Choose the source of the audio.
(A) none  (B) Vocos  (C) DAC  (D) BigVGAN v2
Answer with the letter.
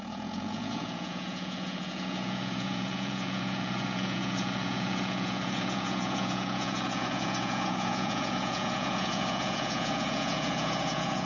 B